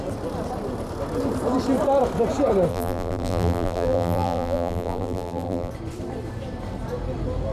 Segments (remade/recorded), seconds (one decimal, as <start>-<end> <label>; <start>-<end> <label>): 0.0-2.7 recorded; 2.7-5.7 remade; 5.7-7.5 recorded